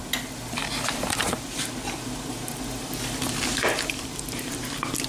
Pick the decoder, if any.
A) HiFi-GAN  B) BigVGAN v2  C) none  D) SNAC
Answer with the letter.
C